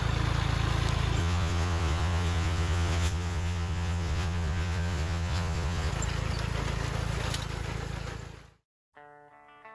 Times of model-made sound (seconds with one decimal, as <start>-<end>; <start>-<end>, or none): 1.2-5.9